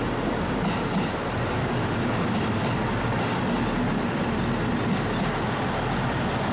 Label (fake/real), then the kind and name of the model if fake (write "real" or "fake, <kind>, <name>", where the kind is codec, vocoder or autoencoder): real